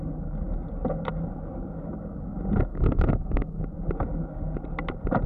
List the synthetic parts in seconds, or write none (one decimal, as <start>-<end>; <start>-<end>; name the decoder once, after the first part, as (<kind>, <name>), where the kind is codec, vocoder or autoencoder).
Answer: 2.7-3.6 (codec, SNAC)